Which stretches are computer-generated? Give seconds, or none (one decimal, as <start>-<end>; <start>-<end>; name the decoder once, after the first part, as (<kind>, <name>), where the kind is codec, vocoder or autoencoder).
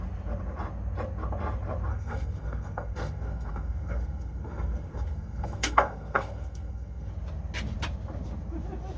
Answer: 1.9-7.1 (codec, SNAC)